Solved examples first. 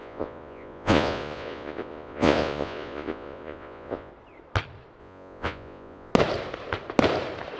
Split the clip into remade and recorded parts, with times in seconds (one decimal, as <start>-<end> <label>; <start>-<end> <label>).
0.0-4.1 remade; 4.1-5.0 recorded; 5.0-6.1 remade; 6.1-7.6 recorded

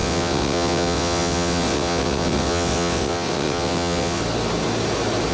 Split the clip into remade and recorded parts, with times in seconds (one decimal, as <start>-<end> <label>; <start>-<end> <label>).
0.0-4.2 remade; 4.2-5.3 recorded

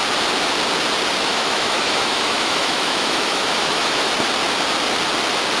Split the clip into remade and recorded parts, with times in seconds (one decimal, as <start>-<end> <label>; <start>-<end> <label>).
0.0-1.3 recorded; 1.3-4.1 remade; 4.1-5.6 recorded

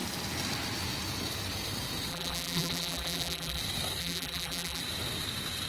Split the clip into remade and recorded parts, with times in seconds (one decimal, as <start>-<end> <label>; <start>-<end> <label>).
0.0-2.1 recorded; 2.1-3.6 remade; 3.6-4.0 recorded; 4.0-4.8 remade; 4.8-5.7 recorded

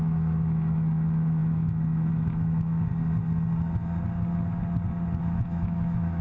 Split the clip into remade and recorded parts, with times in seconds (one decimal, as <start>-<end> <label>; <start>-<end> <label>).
0.0-2.9 remade; 2.9-5.2 recorded; 5.2-6.2 remade

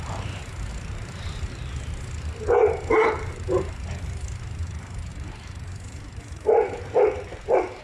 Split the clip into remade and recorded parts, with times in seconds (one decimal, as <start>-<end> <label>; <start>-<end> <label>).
0.0-0.7 recorded; 0.7-1.5 remade; 1.5-2.6 recorded; 2.6-3.3 remade; 3.3-5.1 recorded; 5.1-7.8 remade